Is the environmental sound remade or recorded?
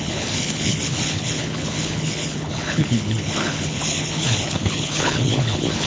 remade